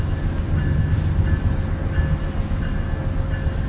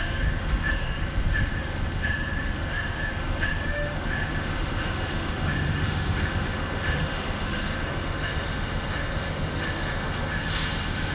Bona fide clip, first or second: first